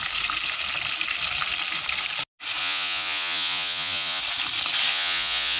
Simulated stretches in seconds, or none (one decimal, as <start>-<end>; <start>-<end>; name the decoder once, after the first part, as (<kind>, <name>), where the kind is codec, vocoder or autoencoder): 2.6-4.2 (vocoder, Vocos); 4.9-5.6